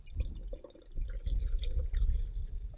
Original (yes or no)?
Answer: yes